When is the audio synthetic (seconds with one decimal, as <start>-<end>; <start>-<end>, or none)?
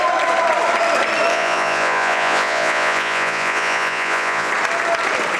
1.3-4.5